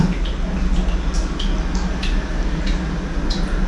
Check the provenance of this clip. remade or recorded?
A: recorded